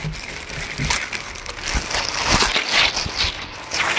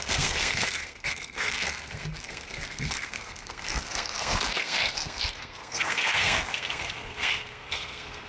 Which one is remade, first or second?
second